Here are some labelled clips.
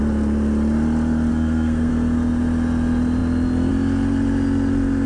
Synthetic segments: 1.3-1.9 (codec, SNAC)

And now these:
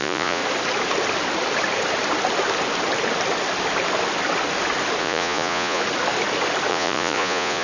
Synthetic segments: 0.0-0.4 (vocoder, Vocos); 5.0-5.8; 6.7-7.6

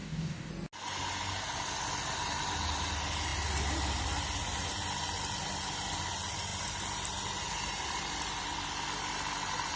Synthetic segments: 0.0-0.5 (codec, DAC)